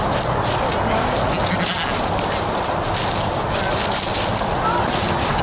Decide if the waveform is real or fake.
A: real